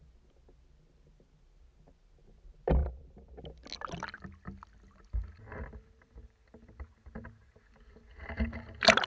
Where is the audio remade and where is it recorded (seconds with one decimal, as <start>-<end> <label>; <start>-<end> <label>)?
0.0-2.8 recorded; 2.8-3.4 remade; 3.4-5.7 recorded; 5.7-6.9 remade; 6.9-7.4 recorded; 7.4-9.1 remade